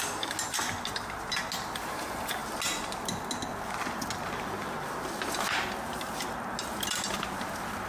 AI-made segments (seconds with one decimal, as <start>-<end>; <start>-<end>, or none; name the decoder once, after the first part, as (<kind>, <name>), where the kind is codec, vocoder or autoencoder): none